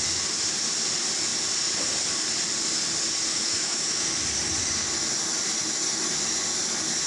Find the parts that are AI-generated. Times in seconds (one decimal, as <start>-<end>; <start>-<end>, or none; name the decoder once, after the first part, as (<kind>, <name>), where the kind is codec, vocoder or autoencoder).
3.3-3.9 (autoencoder, DAC-VAE)